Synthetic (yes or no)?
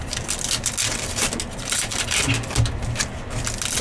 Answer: no